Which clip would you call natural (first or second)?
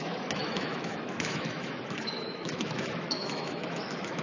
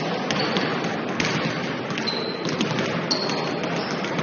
second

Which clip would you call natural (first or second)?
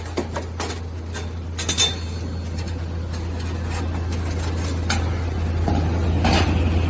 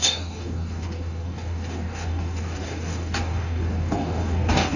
first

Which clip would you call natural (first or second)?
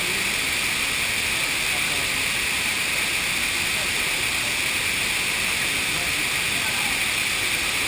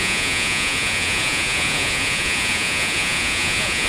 first